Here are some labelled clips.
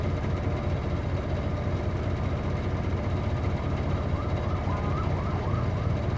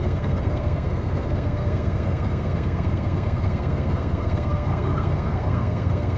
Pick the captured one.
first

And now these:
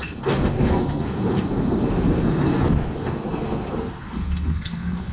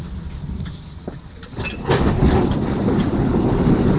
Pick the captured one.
second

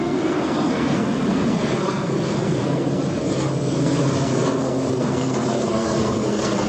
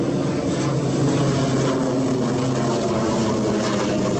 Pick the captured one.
second